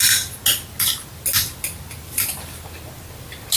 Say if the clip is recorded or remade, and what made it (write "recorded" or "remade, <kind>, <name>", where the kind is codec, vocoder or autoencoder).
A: recorded